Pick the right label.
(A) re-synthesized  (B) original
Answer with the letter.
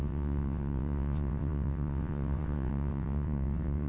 A